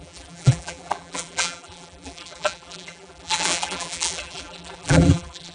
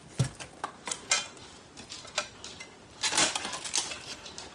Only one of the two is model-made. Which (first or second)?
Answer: first